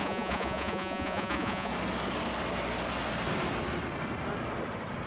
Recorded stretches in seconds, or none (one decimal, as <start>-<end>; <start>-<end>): 1.7-5.1